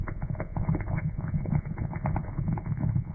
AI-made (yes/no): yes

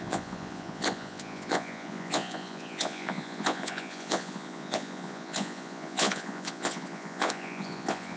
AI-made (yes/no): yes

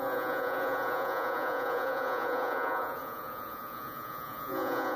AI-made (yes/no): yes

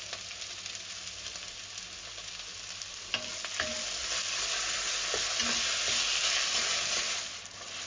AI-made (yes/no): no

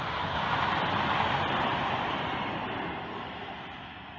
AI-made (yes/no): no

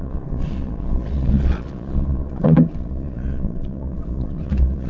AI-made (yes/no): yes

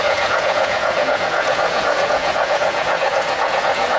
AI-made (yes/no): yes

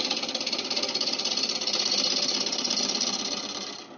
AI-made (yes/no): no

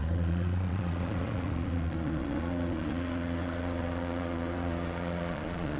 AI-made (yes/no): yes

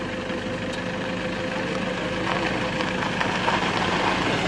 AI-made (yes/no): no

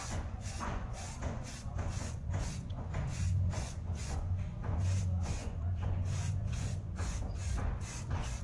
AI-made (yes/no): yes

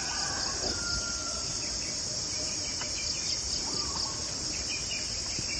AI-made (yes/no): no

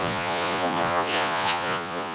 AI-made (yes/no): yes